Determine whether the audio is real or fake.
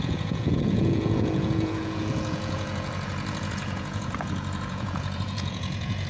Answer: fake